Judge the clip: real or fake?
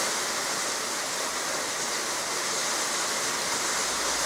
real